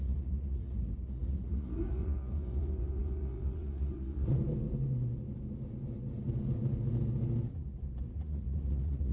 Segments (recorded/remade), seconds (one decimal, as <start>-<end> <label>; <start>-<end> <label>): 0.0-4.4 remade; 4.4-8.1 recorded; 8.1-9.1 remade